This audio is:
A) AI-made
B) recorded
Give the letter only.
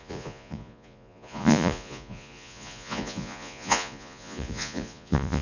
A